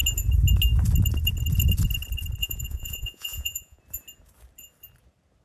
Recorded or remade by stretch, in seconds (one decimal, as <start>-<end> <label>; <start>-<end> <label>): 0.0-2.4 recorded; 2.4-3.8 remade; 3.8-5.4 recorded

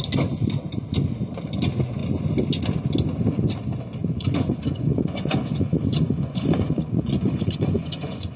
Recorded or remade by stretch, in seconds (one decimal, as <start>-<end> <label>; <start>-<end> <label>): 0.0-4.0 recorded; 4.0-8.4 remade

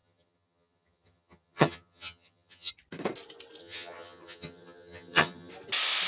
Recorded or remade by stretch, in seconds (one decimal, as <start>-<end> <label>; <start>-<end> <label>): 0.0-2.7 remade; 2.7-3.6 recorded; 3.6-5.5 remade; 5.5-6.1 recorded

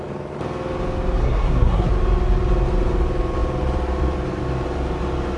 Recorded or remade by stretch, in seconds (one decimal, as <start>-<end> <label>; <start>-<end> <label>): 0.0-1.2 recorded; 1.2-1.9 remade; 1.9-5.4 recorded

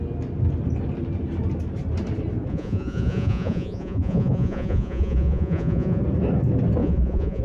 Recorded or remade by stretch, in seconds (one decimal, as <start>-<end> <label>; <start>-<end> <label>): 0.0-2.5 recorded; 2.5-6.0 remade; 6.0-6.8 recorded; 6.8-7.4 remade

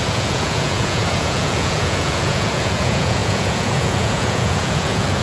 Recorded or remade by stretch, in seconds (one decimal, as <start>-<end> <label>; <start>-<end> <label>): 0.0-5.2 remade

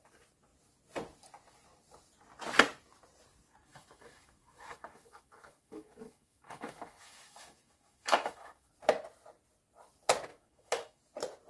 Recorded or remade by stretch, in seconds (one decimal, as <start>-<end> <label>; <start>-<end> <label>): 0.0-3.7 recorded; 3.7-8.7 remade; 8.7-10.3 recorded; 10.3-11.0 remade; 11.0-11.5 recorded